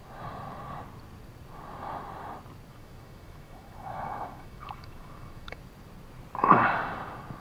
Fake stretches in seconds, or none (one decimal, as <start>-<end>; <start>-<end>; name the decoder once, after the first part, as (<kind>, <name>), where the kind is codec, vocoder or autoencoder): 2.7-5.6 (autoencoder, DAC-VAE)